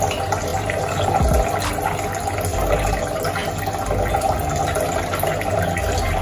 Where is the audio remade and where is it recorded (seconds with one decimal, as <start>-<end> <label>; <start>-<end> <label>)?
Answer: 0.0-0.5 recorded; 0.5-1.1 remade; 1.1-2.5 recorded; 2.5-3.0 remade; 3.0-6.2 recorded